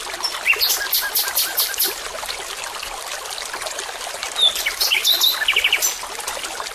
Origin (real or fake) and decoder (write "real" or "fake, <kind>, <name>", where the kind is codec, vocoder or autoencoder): real